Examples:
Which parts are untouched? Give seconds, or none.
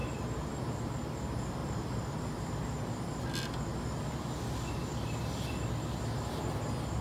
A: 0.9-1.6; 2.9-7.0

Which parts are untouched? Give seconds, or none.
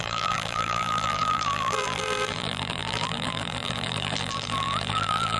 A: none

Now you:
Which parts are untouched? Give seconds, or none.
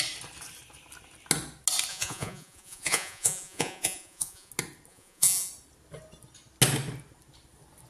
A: 0.0-1.9; 4.5-4.9; 5.5-7.9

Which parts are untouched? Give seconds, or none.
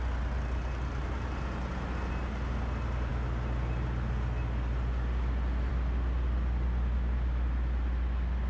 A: 0.0-8.5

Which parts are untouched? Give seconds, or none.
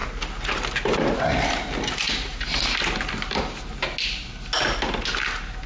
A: 0.0-5.7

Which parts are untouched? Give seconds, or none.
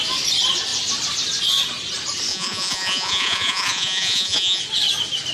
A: 0.0-2.3; 4.6-5.3